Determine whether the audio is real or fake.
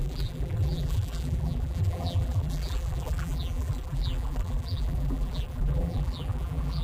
fake